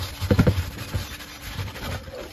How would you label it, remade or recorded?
recorded